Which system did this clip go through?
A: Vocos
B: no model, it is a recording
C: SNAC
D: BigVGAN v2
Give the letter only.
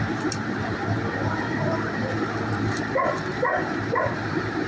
D